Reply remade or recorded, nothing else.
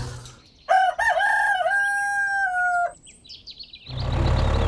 recorded